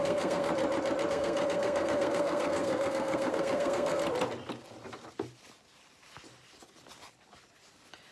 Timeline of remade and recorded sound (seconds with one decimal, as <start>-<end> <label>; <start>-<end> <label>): 0.0-0.5 remade; 0.5-1.1 recorded; 1.1-4.0 remade; 4.0-8.1 recorded